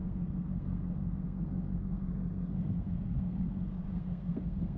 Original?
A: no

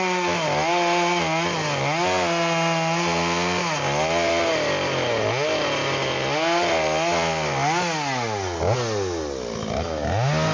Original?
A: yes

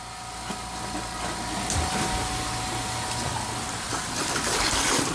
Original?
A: yes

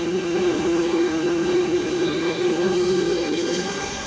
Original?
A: no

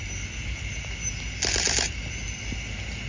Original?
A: yes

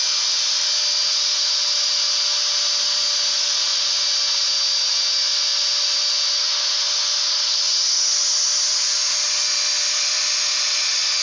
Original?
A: yes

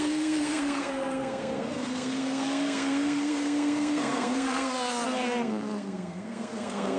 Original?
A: no